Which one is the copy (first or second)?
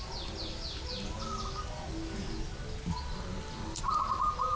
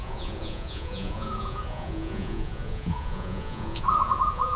second